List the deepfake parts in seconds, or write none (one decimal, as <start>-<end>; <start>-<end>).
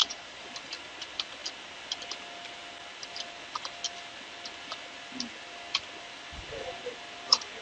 0.0-0.5